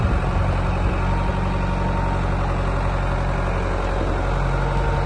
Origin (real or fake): real